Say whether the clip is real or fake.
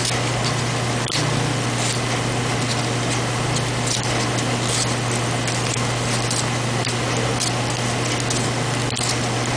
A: real